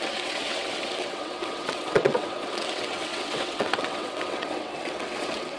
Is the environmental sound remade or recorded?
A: remade